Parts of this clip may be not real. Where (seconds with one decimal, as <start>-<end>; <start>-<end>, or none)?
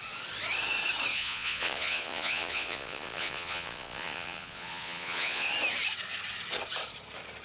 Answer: 1.1-5.5